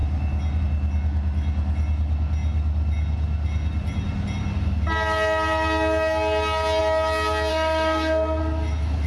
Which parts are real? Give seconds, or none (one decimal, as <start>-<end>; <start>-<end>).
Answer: 0.0-7.5; 8.4-9.1